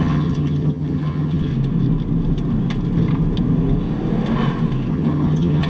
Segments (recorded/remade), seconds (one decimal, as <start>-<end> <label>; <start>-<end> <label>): 0.0-1.5 remade; 1.5-4.9 recorded; 4.9-5.7 remade